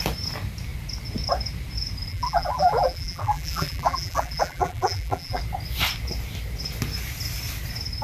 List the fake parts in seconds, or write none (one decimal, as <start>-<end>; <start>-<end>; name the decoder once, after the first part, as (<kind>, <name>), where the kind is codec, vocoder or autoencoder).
2.1-5.4 (vocoder, BigVGAN v2)